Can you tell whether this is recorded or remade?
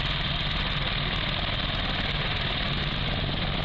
recorded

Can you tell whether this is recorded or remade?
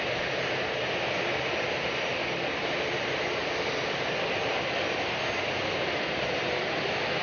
recorded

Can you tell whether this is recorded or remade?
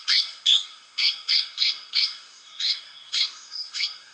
remade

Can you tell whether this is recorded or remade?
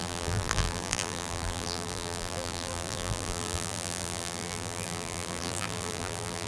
remade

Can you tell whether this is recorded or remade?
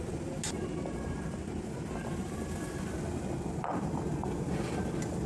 recorded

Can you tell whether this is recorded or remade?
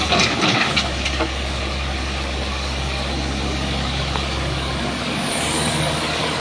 remade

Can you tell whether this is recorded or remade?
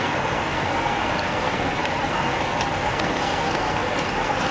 remade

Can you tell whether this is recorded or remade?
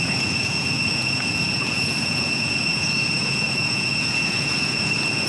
remade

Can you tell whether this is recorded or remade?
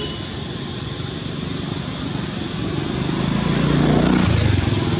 recorded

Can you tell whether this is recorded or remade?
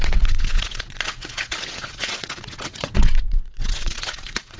remade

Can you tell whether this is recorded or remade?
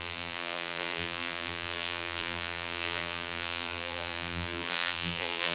remade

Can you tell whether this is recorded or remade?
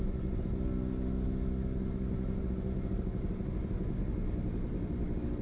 recorded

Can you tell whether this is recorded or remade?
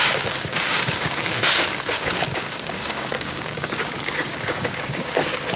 remade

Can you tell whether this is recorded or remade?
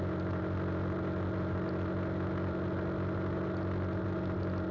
recorded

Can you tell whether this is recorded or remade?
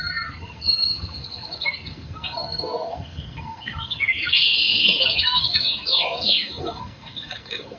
remade